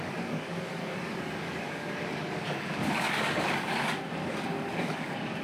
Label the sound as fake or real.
fake